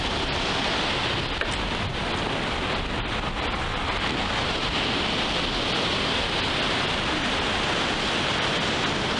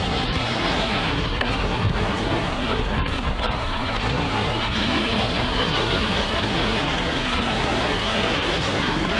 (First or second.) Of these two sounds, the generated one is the second